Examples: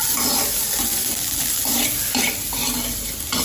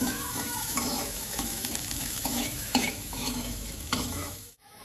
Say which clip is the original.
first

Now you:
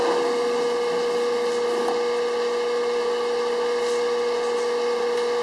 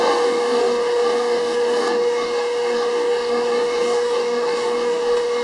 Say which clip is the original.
first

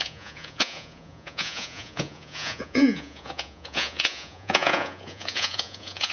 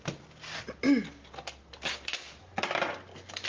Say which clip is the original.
second